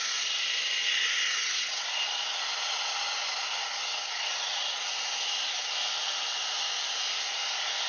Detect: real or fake real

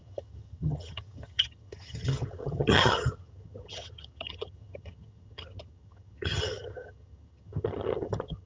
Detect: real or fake fake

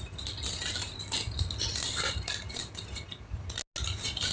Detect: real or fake real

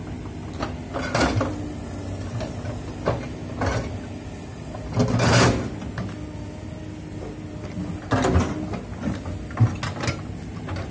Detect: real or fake real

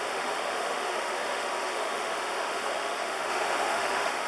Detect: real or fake fake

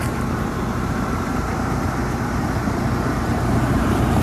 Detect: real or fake fake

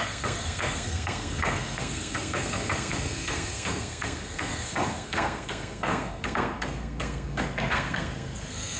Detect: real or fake fake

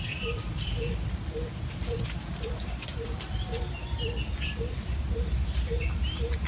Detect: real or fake fake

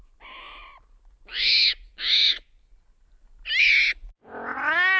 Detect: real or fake real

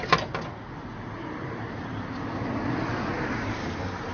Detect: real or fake real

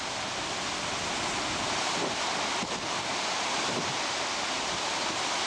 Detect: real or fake real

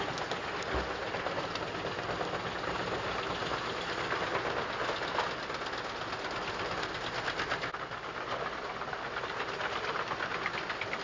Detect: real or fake real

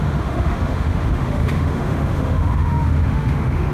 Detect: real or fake fake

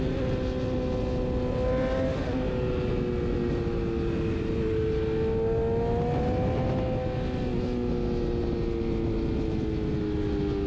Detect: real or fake real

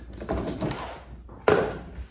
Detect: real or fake real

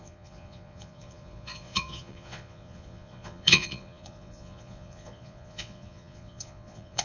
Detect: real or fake fake